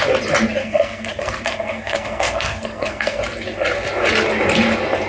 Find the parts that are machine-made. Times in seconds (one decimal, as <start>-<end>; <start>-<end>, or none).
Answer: 0.6-3.2

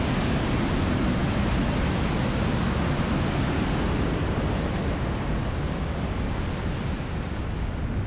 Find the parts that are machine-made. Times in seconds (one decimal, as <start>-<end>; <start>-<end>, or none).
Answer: none

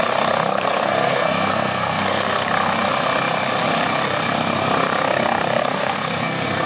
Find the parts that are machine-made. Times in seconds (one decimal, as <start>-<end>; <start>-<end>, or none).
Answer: 0.5-2.5; 5.6-6.7

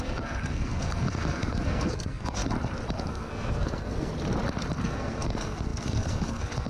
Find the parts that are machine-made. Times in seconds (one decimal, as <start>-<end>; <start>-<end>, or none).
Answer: 0.0-2.4; 3.0-4.1; 4.8-6.7

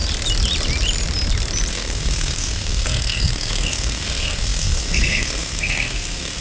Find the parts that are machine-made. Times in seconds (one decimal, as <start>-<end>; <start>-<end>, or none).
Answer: 1.7-6.4

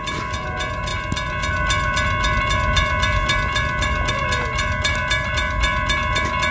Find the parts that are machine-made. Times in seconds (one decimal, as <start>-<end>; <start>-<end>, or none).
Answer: none